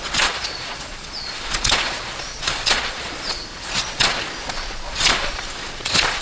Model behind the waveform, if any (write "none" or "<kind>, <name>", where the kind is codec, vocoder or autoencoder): vocoder, Vocos